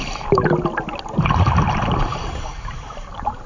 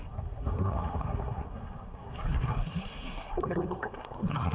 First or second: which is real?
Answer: first